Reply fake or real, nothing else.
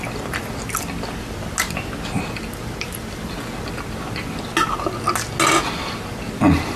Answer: real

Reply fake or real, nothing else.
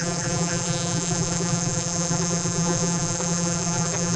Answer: fake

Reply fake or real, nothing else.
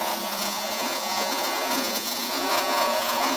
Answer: fake